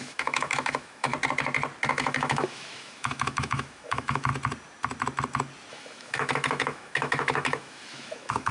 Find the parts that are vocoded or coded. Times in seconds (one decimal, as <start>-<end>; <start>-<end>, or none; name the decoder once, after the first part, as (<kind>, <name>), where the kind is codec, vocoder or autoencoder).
0.0-1.1 (autoencoder, DAC-VAE); 1.9-4.3; 5.7-8.5